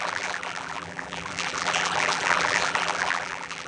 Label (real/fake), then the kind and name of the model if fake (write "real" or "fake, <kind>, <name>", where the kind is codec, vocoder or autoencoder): fake, vocoder, BigVGAN v2